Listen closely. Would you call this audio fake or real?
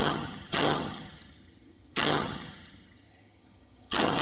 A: fake